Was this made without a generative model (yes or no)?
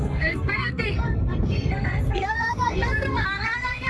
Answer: no